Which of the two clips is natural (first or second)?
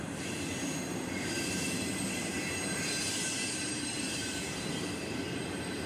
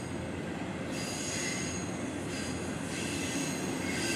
second